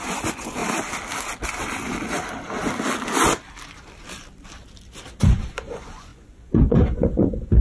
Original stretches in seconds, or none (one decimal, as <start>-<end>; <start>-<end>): 0.6-5.2